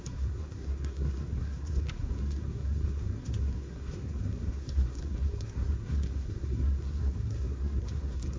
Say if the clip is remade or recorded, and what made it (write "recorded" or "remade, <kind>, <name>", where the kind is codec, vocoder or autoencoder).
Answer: remade, codec, SNAC